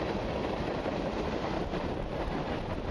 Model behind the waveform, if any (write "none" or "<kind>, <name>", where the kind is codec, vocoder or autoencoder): vocoder, BigVGAN v2